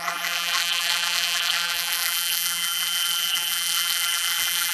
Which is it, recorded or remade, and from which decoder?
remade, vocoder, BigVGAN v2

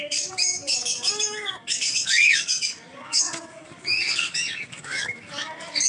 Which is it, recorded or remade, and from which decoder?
remade, codec, DAC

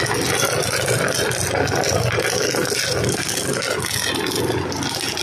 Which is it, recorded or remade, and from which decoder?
recorded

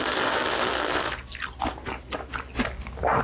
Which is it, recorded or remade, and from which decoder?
recorded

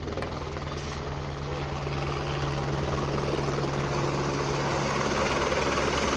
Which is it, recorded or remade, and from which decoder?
recorded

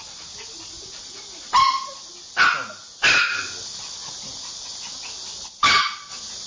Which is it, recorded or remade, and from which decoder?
recorded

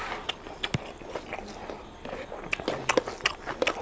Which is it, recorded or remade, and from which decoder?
recorded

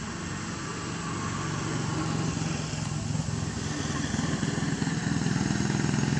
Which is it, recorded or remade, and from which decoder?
recorded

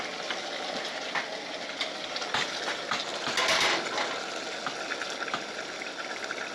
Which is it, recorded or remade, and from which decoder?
recorded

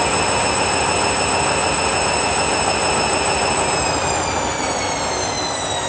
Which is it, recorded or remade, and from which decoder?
recorded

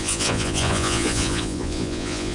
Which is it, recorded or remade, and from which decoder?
remade, vocoder, Vocos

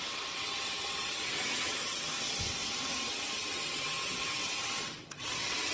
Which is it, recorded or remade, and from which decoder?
remade, vocoder, WaveNeXt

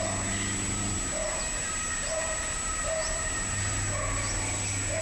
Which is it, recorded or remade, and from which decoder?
recorded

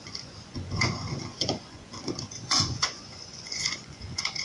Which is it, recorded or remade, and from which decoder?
remade, vocoder, Vocos